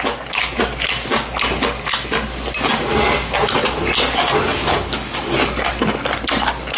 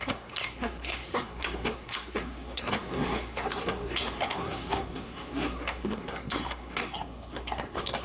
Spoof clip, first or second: second